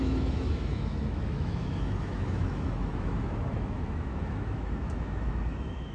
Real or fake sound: fake